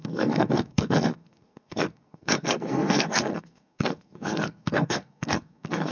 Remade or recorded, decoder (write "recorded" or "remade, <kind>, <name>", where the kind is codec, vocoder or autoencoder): remade, codec, SNAC